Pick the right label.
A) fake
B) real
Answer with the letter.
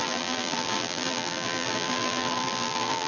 A